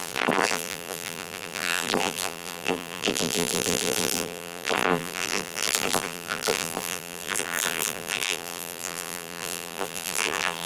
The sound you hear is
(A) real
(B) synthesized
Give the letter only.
B